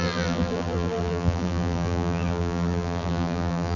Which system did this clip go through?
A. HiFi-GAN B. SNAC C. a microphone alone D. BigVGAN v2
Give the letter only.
D